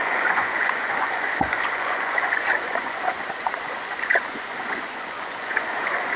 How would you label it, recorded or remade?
remade